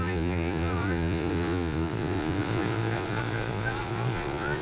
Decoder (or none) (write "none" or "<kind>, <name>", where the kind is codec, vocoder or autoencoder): vocoder, Vocos